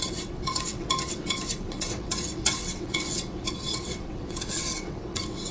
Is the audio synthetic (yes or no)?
yes